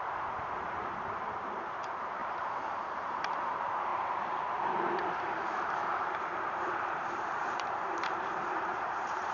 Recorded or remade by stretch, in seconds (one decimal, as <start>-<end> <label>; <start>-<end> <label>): 0.0-9.3 remade